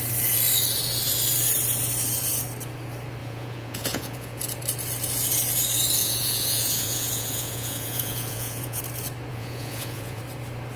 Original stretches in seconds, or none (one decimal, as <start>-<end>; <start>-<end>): 0.0-3.2; 4.4-6.0; 8.8-9.3; 10.2-10.8